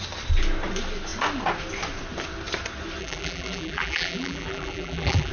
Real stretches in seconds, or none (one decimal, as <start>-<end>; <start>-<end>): 0.0-3.0